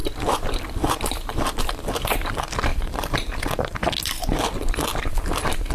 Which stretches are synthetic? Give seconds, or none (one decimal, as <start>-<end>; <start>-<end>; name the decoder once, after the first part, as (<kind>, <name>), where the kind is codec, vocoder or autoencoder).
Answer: 0.0-2.3 (vocoder, BigVGAN v2); 2.7-3.9; 4.9-5.7